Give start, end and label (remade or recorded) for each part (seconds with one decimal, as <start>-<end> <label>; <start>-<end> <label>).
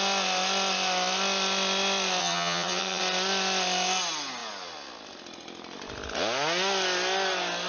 0.0-2.2 recorded; 2.2-3.0 remade; 3.0-7.7 recorded